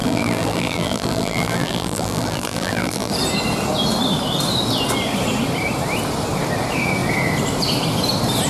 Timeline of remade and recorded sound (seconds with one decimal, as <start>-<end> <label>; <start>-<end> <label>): 0.0-3.1 remade; 3.1-8.5 recorded